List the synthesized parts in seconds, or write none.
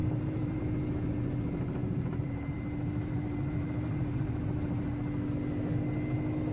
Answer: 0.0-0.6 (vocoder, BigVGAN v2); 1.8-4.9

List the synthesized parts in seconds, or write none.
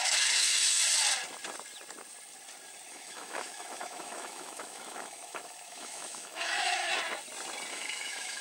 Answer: 0.0-0.8 (autoencoder, DAC-VAE); 2.9-6.9; 7.7-8.4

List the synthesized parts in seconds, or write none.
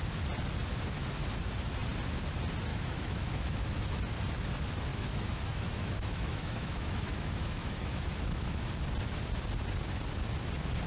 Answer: 2.7-4.0 (autoencoder, DAC-VAE); 4.9-8.7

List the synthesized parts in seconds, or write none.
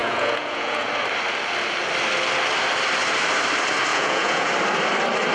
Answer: 0.0-0.9 (vocoder, Vocos); 3.9-4.5